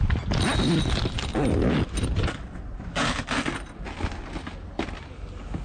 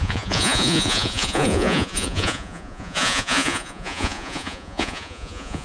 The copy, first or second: second